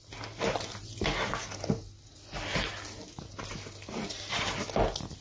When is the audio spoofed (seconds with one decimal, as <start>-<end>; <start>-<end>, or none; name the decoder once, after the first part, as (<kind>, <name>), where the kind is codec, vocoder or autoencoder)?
none